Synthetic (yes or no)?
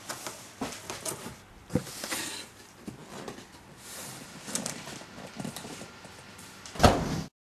no